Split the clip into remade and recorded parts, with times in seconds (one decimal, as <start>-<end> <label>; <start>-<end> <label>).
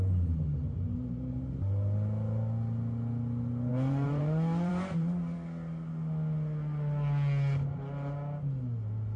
0.0-3.7 recorded; 3.7-4.7 remade; 4.7-9.2 recorded